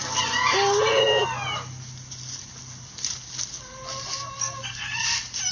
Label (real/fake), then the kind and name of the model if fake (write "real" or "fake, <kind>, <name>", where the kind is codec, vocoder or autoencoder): real